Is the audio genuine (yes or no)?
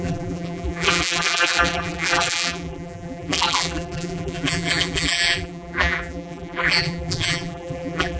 no